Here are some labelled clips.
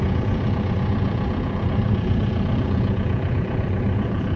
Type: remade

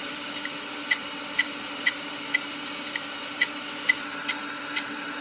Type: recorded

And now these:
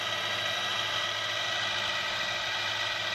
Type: recorded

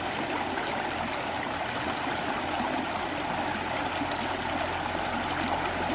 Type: recorded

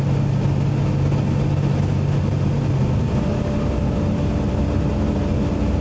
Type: recorded